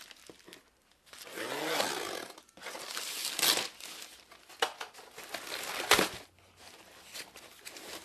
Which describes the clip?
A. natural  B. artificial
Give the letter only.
A